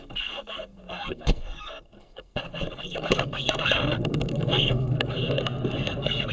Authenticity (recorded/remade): remade